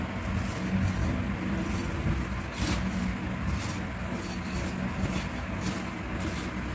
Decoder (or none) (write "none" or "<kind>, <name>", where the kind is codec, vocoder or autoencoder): none